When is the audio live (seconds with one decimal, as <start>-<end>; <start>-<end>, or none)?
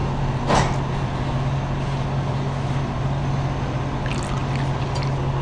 0.0-5.4